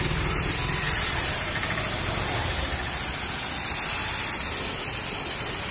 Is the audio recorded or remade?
remade